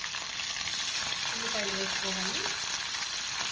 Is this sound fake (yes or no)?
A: no